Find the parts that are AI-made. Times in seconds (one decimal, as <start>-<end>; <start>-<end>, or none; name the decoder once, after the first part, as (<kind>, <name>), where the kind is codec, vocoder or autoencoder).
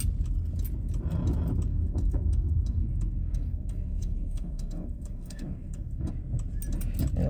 1.7-6.1 (codec, SNAC)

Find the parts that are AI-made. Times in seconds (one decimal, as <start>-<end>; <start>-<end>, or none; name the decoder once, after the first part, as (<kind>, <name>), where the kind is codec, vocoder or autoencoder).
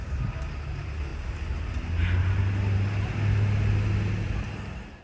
none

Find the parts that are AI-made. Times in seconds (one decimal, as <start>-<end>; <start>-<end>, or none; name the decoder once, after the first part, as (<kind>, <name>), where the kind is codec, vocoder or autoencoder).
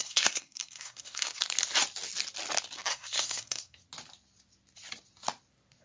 0.0-1.4 (codec, SNAC); 2.9-3.8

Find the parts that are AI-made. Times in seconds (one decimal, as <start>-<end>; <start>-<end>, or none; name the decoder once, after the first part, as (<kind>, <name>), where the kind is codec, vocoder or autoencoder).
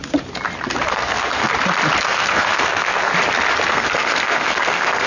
0.9-1.5 (codec, SNAC); 2.0-3.1; 3.7-5.1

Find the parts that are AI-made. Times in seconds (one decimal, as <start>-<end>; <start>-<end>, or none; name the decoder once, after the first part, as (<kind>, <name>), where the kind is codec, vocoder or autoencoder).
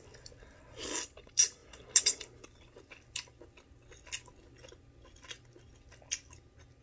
none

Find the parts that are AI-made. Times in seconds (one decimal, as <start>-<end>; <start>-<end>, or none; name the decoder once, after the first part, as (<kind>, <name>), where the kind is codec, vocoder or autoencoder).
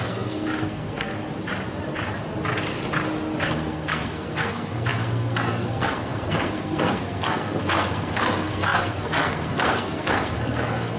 0.0-1.1 (codec, SNAC); 3.4-11.0